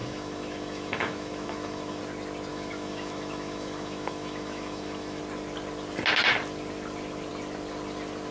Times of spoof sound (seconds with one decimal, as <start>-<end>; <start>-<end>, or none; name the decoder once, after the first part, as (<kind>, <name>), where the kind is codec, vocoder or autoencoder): 0.0-2.0 (autoencoder, DAC-VAE); 2.5-5.2